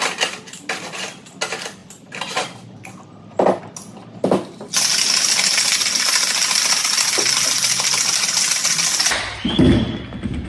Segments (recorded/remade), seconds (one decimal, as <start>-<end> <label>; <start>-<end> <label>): 0.0-10.5 recorded